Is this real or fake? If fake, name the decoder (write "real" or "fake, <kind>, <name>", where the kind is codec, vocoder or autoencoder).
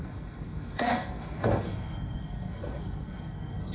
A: fake, codec, SNAC